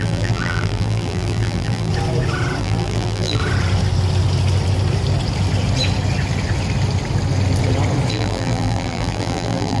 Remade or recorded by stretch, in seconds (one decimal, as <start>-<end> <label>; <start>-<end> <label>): 0.0-1.9 remade; 1.9-2.6 recorded; 2.6-3.4 remade; 3.4-8.1 recorded; 8.1-9.8 remade